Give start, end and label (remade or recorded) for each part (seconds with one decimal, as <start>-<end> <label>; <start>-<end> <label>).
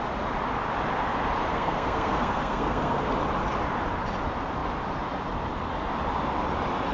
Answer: 0.0-1.5 recorded; 1.5-3.1 remade; 3.1-6.9 recorded